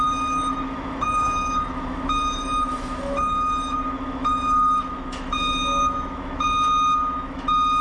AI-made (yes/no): yes